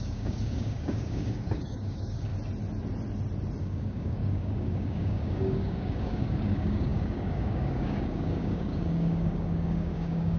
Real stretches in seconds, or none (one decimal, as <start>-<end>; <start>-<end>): 2.3-3.6